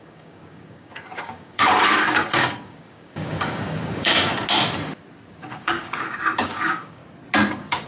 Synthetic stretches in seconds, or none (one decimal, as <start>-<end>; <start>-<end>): 0.0-4.3; 5.3-7.0; 7.5-7.9

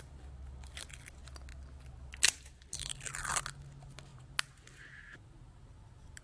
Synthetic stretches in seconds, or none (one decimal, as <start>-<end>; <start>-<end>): none

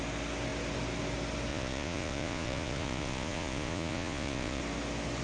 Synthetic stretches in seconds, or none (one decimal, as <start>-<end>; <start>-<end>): 1.5-4.6

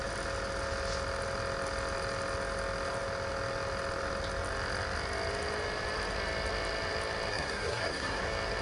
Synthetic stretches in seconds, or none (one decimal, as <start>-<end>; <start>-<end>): 7.3-8.2

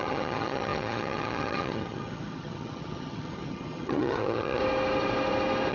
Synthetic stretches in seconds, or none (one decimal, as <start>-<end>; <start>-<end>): 0.0-4.6

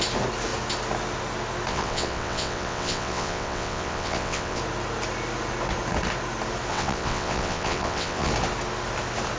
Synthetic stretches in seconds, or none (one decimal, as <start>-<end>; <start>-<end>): 1.7-4.6; 6.7-8.3

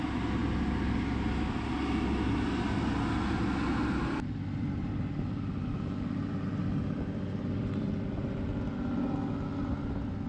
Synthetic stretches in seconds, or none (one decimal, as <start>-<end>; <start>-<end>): none